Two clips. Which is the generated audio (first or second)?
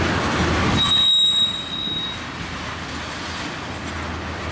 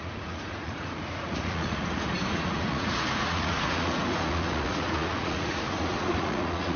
second